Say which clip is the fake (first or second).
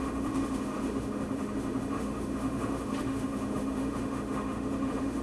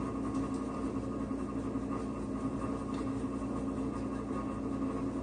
first